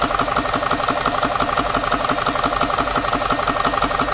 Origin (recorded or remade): recorded